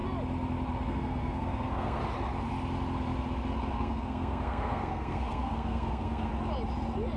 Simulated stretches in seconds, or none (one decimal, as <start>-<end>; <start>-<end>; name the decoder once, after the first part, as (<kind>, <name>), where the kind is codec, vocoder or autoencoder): 0.9-2.0 (codec, SNAC); 3.7-6.3